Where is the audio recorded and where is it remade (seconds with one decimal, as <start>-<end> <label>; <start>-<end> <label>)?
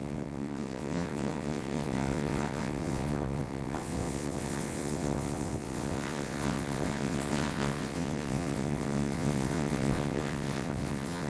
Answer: 0.0-11.3 remade